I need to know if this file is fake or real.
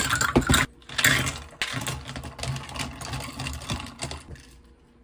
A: real